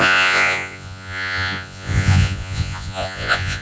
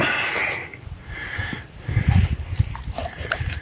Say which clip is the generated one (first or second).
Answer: first